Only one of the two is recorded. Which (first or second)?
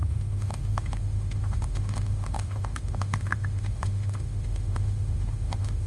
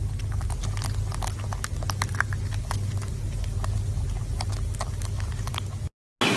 second